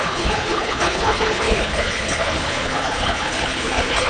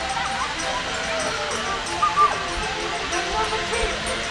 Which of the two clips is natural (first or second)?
second